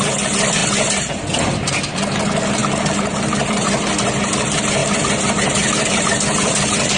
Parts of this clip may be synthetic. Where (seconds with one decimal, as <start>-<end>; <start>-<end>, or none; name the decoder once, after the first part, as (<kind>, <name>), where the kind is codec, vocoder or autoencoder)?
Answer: 2.6-3.7 (vocoder, BigVGAN v2); 4.8-6.1